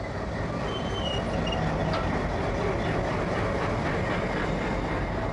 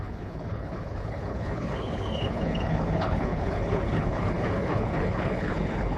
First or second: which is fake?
second